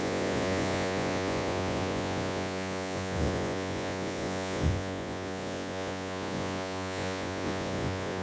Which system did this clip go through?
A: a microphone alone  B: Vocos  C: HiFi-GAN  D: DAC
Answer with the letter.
B